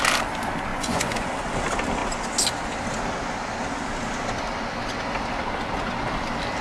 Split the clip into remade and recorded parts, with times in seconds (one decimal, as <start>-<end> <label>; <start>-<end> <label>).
0.0-0.7 recorded; 0.7-1.3 remade; 1.3-6.6 recorded